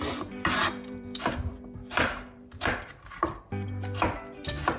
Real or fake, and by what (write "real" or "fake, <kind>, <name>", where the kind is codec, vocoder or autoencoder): fake, vocoder, BigVGAN v2